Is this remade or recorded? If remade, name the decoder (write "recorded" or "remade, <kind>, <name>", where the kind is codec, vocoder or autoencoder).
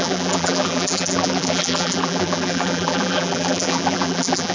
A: remade, vocoder, BigVGAN v2